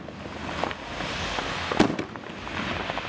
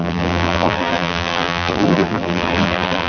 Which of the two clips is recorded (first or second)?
first